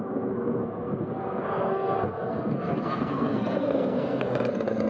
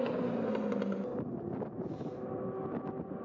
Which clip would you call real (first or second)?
second